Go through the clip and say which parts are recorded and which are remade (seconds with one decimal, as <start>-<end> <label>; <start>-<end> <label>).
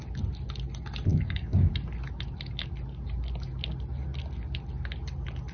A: 0.0-1.1 recorded; 1.1-1.7 remade; 1.7-5.5 recorded